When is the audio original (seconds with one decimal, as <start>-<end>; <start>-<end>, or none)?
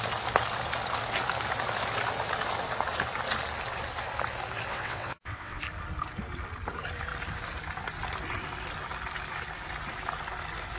0.0-4.7; 5.6-10.8